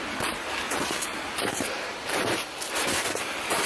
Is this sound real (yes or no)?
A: no